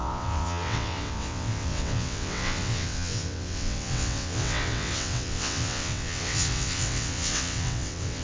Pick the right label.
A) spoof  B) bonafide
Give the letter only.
A